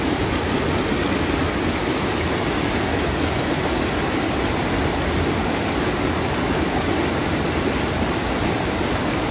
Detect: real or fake real